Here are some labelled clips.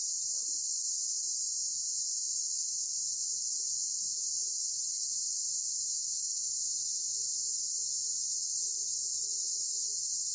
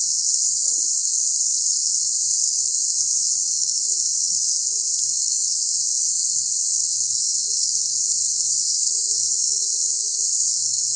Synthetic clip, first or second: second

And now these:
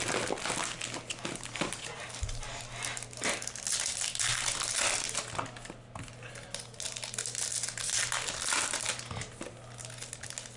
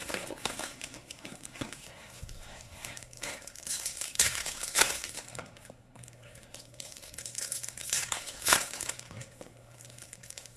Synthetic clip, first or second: second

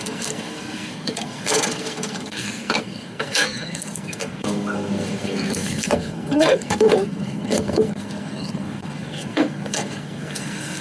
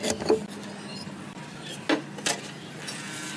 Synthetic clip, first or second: first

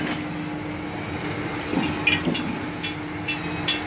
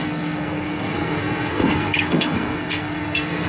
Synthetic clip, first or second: second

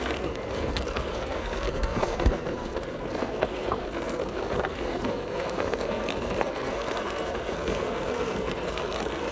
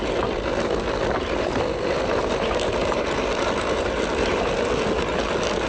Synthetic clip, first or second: first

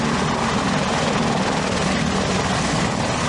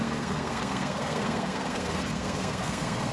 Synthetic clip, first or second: second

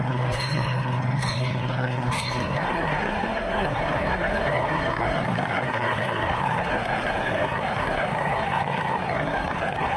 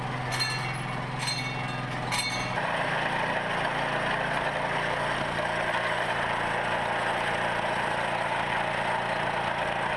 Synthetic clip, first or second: first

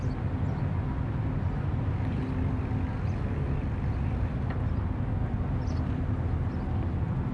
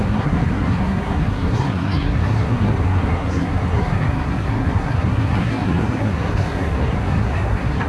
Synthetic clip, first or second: second